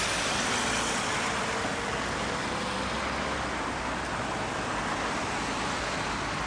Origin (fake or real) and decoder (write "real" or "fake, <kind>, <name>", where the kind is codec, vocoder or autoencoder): real